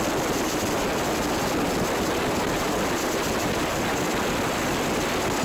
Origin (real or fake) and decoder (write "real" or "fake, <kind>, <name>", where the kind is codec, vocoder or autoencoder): real